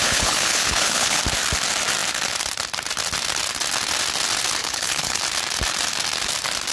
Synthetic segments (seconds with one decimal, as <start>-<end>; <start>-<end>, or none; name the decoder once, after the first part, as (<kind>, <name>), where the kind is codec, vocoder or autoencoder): 0.0-1.2 (codec, HILCodec); 4.6-5.2